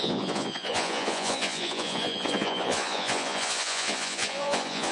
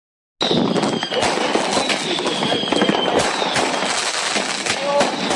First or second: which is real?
second